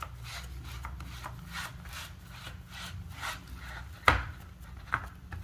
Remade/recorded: recorded